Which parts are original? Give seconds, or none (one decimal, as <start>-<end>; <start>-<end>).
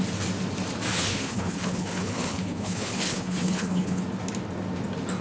0.0-0.9; 4.0-5.2